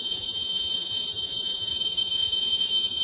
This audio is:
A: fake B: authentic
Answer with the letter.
A